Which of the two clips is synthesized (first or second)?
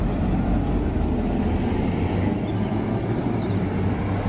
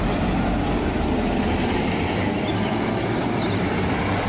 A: second